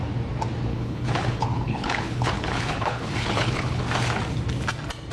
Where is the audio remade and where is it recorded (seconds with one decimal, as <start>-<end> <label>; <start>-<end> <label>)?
0.0-0.7 recorded; 0.7-3.8 remade; 3.8-5.1 recorded